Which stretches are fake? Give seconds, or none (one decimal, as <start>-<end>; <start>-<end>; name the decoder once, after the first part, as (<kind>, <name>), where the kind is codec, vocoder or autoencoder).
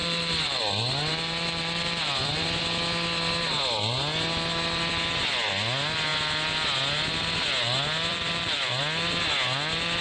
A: 0.0-0.6 (vocoder, BigVGAN v2); 1.1-2.4; 8.1-8.8